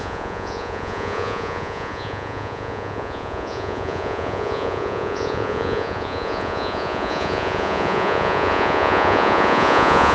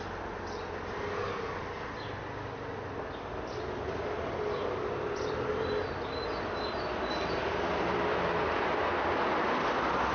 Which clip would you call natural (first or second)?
second